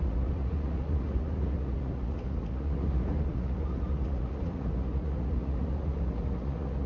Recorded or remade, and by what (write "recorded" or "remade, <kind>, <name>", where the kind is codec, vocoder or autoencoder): remade, vocoder, Vocos